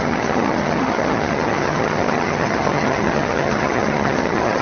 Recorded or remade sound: remade